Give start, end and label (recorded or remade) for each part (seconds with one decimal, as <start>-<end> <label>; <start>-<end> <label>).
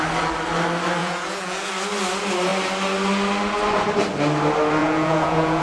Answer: 0.0-1.0 recorded; 1.0-1.7 remade; 1.7-4.8 recorded; 4.8-5.6 remade